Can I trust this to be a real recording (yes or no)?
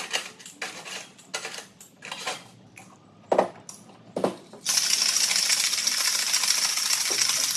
yes